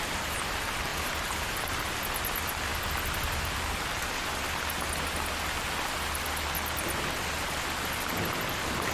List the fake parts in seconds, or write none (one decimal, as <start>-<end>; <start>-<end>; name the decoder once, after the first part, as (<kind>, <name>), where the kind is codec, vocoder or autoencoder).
0.9-2.0 (vocoder, BigVGAN v2)